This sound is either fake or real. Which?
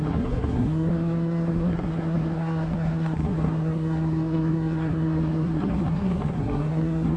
fake